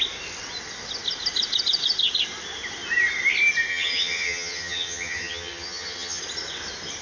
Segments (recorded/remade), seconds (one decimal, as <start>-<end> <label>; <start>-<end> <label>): 0.0-3.7 recorded; 3.7-6.2 remade; 6.2-7.0 recorded